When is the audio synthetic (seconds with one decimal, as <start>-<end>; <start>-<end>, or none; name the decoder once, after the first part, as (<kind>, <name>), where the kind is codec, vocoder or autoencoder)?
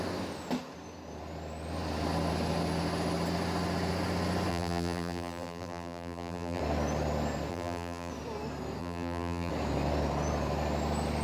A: 4.5-6.6 (vocoder, BigVGAN v2); 7.5-8.1; 8.8-9.5